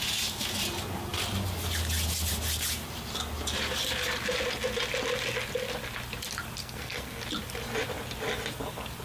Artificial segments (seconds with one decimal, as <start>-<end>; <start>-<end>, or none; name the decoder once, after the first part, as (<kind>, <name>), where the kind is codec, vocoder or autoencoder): 6.6-7.2 (codec, SNAC)